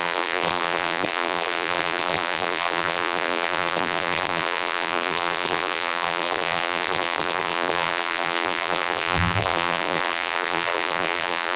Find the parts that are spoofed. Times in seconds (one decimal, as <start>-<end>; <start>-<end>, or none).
0.0-11.6